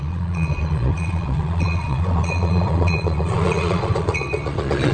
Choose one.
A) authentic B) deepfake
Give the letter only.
B